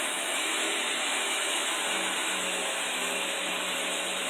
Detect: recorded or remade remade